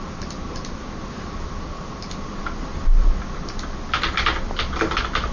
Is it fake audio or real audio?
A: real